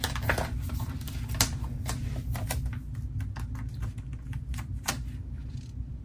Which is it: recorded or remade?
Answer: recorded